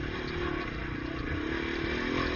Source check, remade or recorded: recorded